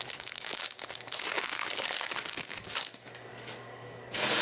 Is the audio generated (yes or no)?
yes